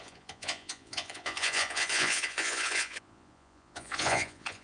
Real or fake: fake